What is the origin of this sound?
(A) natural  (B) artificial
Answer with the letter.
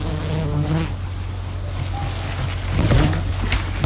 A